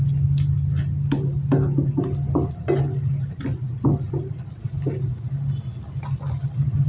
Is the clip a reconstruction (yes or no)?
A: no